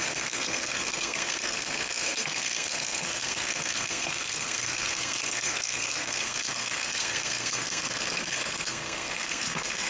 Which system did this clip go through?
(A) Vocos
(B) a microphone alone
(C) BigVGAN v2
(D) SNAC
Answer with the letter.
D